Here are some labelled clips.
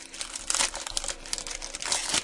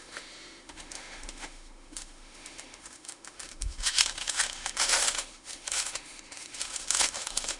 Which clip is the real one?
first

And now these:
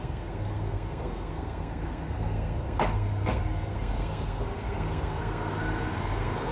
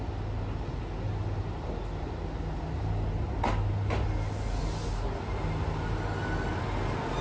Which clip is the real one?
second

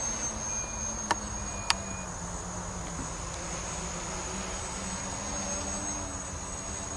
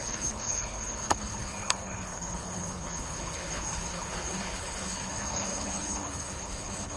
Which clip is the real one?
first